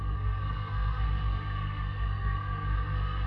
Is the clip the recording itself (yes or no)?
no